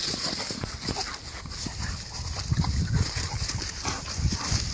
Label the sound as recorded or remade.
recorded